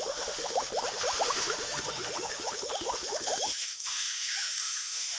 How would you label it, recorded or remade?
remade